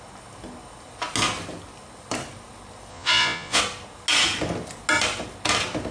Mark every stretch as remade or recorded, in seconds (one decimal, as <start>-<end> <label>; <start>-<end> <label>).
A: 0.0-2.9 recorded; 2.9-3.6 remade; 3.6-5.9 recorded